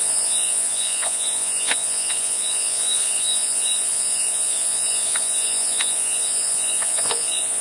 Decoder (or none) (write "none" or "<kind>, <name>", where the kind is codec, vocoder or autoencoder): vocoder, Vocos